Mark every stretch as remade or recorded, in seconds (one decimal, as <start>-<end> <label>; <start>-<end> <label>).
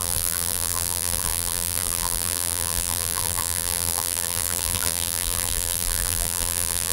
0.0-6.9 remade